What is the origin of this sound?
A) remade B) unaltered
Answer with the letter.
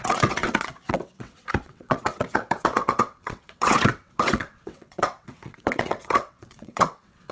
A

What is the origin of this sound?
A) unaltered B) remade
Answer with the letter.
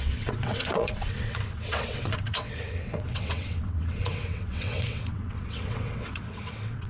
B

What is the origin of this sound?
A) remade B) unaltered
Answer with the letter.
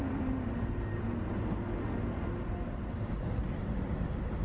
B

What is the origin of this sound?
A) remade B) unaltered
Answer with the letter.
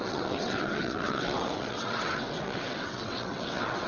A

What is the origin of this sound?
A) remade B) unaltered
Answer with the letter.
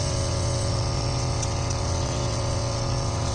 A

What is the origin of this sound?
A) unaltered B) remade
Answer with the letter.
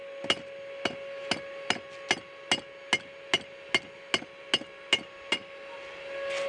A